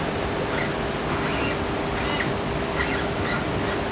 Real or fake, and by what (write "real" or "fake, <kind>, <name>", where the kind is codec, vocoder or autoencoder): real